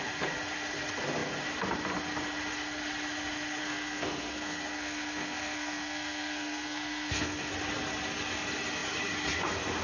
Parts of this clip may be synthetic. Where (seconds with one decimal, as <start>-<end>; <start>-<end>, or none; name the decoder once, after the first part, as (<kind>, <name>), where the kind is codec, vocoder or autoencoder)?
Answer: 3.6-7.5 (codec, SNAC)